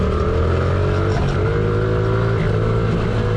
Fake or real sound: real